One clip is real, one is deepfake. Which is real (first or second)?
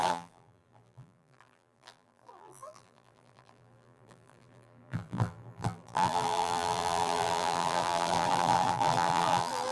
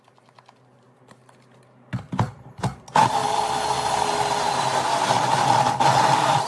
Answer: second